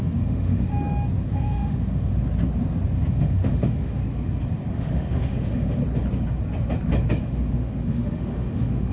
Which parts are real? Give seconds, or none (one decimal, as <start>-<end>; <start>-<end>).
0.7-1.3; 2.1-3.1; 4.0-4.7; 5.8-7.2